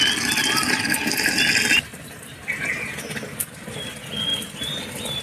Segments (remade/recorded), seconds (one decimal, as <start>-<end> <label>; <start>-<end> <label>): 0.0-0.4 recorded; 0.4-1.5 remade; 1.5-4.3 recorded; 4.3-5.2 remade